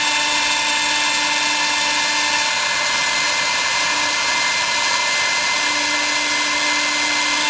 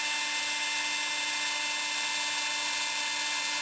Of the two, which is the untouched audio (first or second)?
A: second